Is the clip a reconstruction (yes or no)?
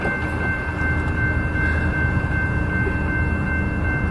no